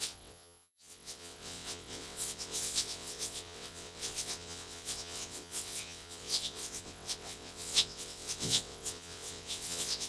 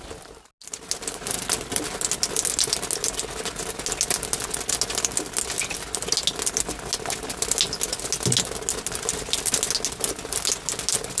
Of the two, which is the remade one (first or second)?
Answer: first